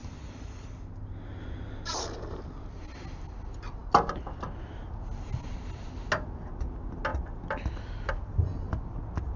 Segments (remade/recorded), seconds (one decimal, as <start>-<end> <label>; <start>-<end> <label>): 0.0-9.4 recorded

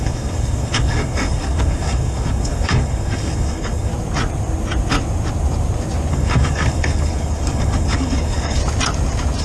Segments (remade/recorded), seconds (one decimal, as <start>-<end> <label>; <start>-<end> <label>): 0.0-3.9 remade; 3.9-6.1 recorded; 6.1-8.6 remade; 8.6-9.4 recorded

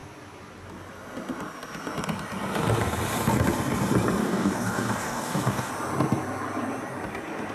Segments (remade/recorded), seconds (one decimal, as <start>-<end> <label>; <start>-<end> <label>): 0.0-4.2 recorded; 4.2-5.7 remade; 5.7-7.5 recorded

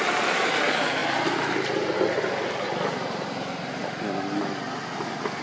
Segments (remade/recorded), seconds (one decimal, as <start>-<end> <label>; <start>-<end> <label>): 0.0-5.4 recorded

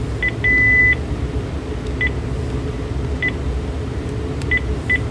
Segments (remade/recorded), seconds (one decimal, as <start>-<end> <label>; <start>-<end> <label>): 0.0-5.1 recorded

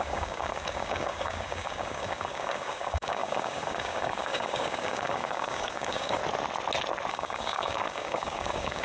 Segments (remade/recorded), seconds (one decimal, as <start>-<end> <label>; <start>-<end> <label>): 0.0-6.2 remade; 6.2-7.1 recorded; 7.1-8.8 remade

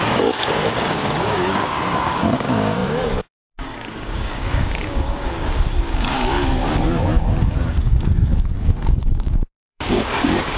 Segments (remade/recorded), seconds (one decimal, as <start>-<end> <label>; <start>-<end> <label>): 0.0-10.6 remade

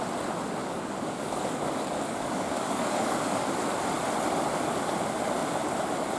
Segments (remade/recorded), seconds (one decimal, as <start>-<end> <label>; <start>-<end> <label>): 0.0-0.6 recorded; 0.6-3.5 remade; 3.5-6.2 recorded